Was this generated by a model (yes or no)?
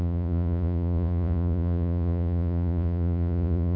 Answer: yes